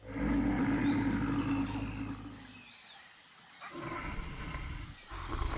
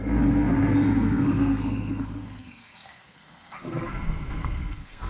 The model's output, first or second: second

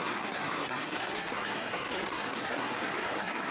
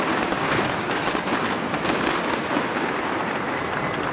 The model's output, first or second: first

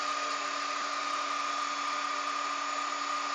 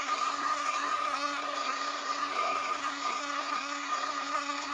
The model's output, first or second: second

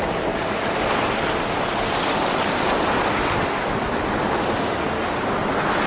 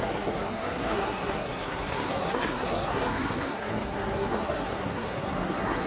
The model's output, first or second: second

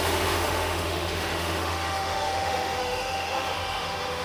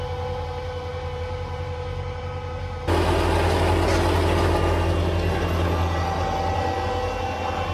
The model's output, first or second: first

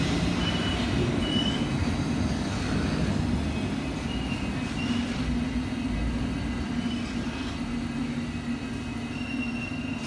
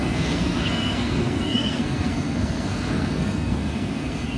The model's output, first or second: second